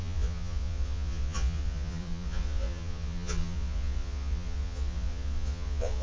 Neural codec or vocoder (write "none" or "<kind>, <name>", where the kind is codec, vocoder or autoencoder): vocoder, Vocos